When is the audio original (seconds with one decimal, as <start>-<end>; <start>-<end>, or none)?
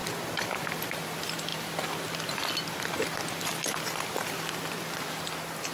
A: 0.9-5.7